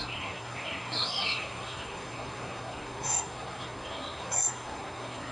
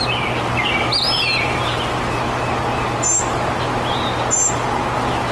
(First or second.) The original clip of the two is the second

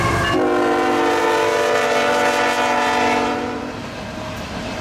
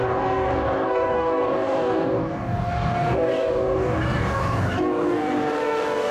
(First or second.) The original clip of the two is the first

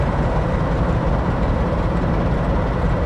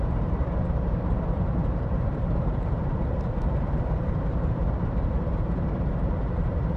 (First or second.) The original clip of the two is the first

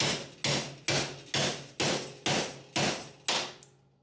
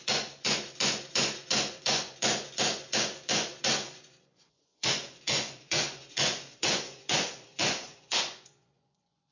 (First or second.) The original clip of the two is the first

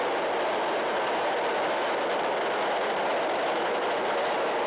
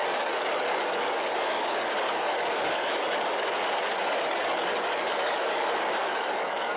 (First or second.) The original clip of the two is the first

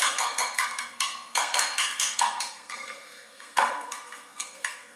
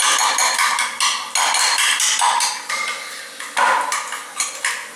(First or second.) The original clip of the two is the second